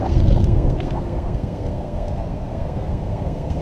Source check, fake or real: fake